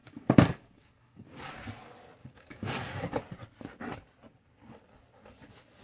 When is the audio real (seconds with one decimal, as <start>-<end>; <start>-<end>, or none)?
1.5-2.2; 3.2-5.8